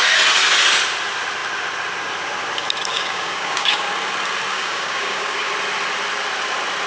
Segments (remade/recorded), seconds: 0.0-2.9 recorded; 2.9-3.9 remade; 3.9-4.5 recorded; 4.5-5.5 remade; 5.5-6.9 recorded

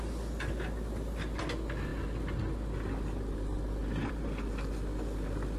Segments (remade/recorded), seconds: 0.0-5.6 recorded

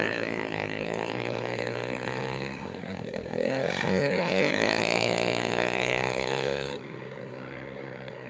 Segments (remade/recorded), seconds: 0.0-8.3 remade